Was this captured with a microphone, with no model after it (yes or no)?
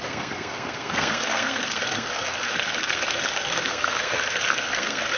no